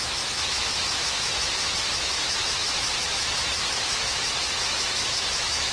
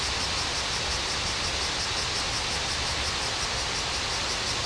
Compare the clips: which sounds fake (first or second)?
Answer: first